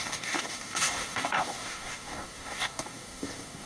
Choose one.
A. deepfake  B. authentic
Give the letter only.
A